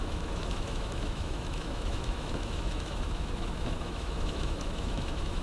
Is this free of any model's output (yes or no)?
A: no